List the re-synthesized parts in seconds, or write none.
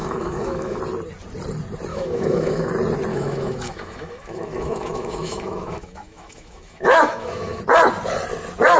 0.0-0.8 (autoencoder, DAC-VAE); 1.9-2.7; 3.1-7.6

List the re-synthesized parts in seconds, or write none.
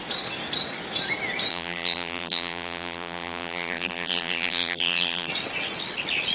1.5-5.3 (vocoder, BigVGAN v2)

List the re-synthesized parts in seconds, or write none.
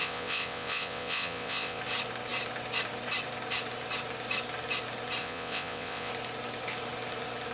0.0-1.8 (vocoder, WaveNeXt); 5.2-6.1